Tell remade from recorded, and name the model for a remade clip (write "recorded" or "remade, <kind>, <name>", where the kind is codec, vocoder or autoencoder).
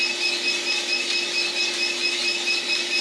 recorded